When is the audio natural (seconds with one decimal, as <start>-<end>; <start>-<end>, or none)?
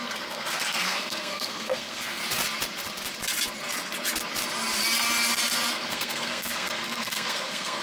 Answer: 2.2-5.7